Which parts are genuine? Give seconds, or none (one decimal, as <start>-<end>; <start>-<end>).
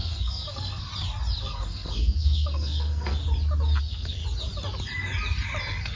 0.9-1.4; 3.2-3.8; 4.2-5.6